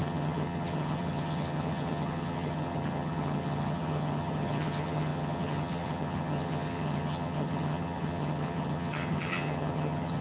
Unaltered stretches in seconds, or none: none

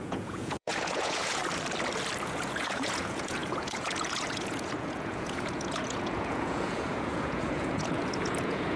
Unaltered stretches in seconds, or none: 1.4-2.3

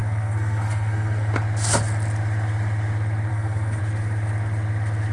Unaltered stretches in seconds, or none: 1.3-3.3; 3.8-5.1

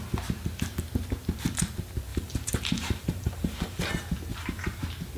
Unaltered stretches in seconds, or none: 0.0-2.1; 3.9-4.3; 4.8-5.2

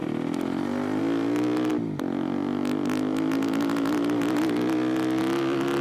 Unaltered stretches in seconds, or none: 1.0-5.8

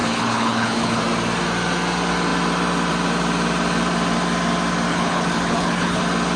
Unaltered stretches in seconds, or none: 1.0-4.9; 6.0-6.4

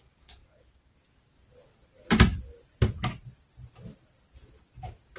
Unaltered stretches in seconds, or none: 0.0-5.2